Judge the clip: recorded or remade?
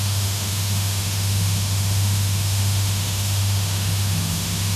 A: remade